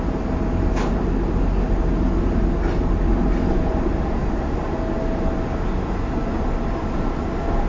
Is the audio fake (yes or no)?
no